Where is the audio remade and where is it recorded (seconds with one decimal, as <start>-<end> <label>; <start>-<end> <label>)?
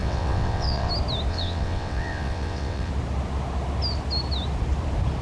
0.0-0.9 remade; 0.9-1.3 recorded; 1.3-2.9 remade; 2.9-5.2 recorded